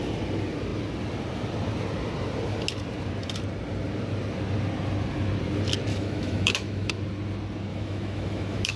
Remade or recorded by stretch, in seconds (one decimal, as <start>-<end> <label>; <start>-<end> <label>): 0.0-5.9 recorded; 5.9-6.9 remade; 6.9-7.7 recorded; 7.7-8.8 remade